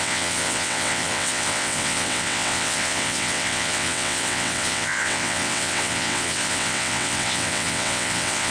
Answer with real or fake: fake